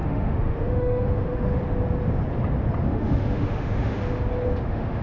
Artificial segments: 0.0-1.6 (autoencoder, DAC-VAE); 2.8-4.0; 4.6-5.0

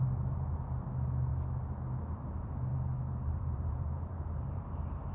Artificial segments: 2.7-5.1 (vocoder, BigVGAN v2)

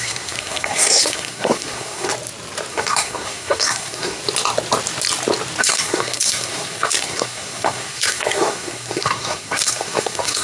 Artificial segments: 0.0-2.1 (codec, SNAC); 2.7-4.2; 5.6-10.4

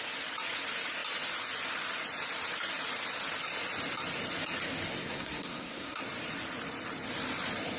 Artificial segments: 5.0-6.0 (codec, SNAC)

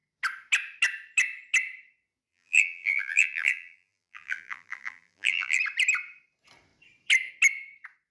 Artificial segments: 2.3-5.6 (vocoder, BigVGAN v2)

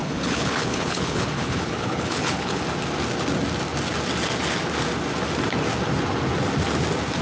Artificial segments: 0.0-2.6 (codec, HILCodec)

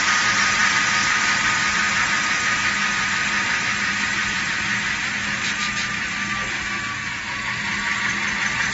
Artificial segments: none